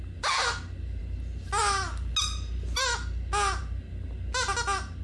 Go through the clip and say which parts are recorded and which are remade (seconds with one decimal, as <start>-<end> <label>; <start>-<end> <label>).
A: 0.0-5.0 recorded